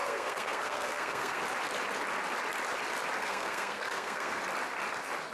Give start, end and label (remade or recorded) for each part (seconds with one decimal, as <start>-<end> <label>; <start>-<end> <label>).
0.0-1.4 remade; 1.4-3.2 recorded; 3.2-4.4 remade; 4.4-5.3 recorded